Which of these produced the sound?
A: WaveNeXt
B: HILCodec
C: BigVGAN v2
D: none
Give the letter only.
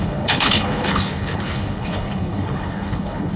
B